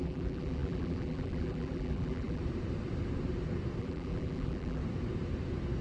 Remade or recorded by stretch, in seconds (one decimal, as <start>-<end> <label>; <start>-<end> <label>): 0.0-2.4 remade; 2.4-3.8 recorded; 3.8-4.8 remade; 4.8-5.8 recorded